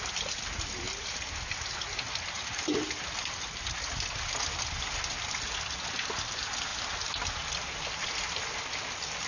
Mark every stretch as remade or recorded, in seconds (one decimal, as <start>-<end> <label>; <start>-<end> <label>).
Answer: 0.0-9.3 recorded